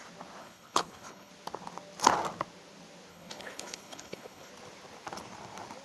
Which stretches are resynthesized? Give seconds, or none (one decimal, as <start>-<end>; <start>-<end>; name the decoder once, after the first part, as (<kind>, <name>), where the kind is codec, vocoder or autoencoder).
0.4-1.3 (codec, HILCodec); 3.1-4.5